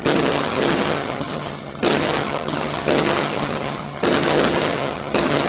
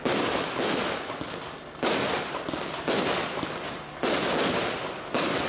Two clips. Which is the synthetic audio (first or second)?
first